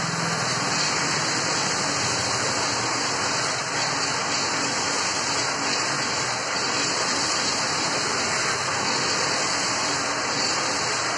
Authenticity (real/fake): real